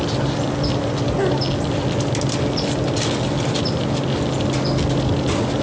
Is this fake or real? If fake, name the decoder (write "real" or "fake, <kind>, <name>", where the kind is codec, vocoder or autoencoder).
real